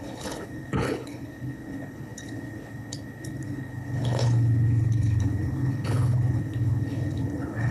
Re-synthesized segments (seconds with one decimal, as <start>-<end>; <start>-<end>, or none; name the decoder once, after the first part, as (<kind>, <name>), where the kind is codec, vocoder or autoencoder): 0.0-7.7 (codec, HILCodec)